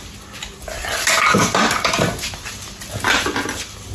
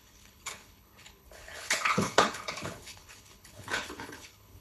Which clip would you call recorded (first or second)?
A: first